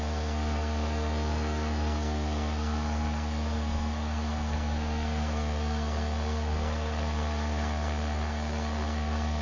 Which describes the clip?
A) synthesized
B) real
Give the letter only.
A